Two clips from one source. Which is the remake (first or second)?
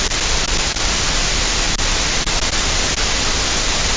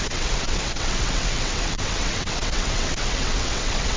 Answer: second